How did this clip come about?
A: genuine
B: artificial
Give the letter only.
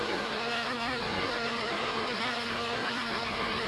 B